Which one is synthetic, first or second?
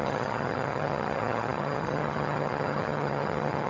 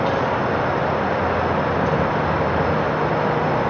first